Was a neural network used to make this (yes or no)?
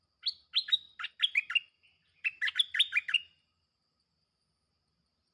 no